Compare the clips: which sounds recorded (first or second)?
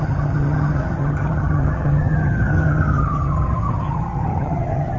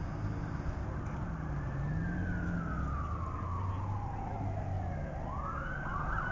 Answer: second